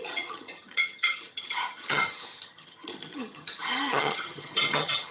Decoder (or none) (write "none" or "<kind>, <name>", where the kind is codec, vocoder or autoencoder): vocoder, HiFi-GAN